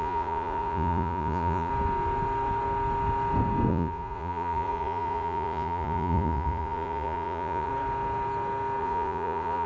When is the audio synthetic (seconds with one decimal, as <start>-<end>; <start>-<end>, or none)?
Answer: 0.0-1.7; 3.7-7.7; 8.8-9.7